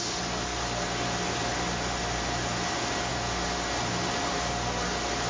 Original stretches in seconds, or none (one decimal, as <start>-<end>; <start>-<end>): 0.0-5.3